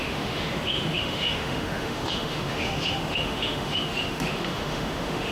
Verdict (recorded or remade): remade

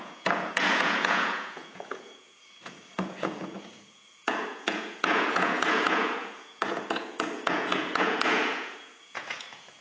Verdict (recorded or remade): remade